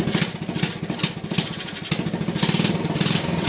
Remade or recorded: recorded